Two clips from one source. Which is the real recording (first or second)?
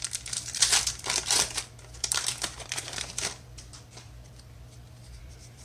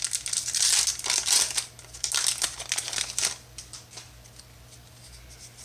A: second